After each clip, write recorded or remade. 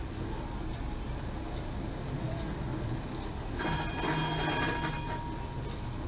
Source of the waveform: recorded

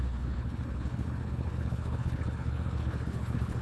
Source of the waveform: remade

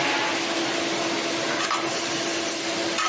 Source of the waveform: recorded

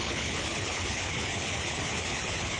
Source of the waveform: remade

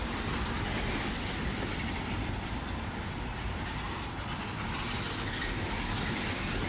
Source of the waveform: recorded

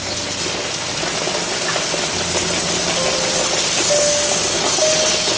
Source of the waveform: recorded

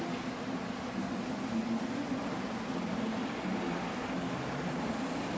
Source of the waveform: recorded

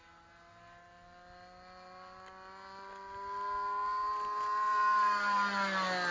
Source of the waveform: recorded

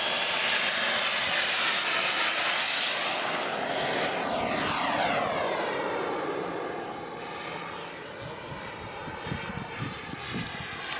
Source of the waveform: recorded